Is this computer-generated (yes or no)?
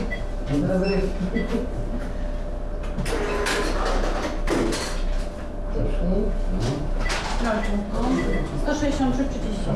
no